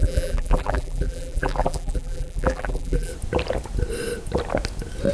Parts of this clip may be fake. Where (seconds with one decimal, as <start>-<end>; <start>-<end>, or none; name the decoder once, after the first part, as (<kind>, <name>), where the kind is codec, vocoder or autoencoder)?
0.0-3.1 (vocoder, BigVGAN v2)